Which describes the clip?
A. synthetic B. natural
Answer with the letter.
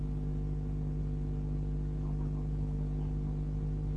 B